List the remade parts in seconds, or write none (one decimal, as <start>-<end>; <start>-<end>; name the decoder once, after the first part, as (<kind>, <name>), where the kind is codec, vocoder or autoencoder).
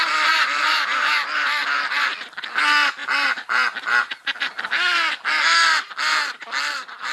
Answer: none